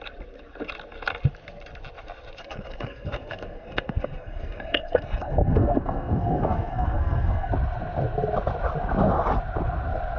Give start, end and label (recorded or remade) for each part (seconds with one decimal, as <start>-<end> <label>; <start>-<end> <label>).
0.0-2.4 recorded; 2.4-7.5 remade; 7.5-10.2 recorded